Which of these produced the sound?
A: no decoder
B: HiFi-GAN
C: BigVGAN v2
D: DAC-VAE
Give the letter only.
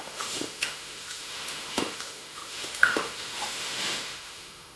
D